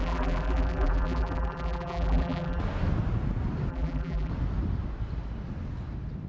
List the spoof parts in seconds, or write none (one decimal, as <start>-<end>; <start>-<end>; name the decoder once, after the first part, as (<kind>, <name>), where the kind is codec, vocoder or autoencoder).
0.0-2.6 (vocoder, BigVGAN v2); 3.7-4.3